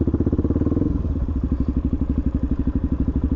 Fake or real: fake